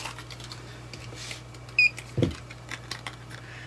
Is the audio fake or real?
real